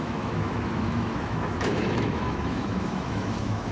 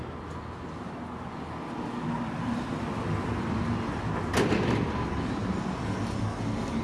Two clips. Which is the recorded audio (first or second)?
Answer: second